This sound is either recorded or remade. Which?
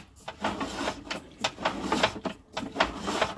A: recorded